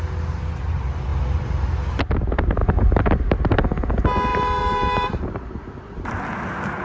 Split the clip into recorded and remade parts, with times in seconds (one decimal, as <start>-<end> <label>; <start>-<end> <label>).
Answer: 0.0-2.6 recorded; 2.6-3.4 remade; 3.4-4.3 recorded; 4.3-5.6 remade; 5.6-6.8 recorded